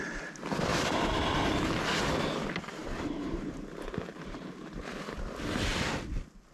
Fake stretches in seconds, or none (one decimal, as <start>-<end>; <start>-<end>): 2.8-4.8